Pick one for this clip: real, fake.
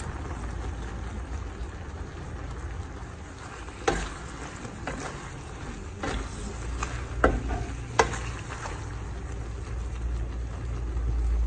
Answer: real